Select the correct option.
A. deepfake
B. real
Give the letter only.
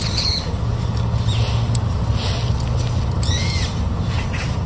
B